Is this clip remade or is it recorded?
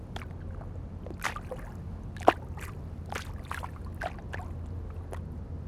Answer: recorded